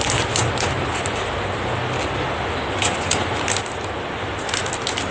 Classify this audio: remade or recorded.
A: recorded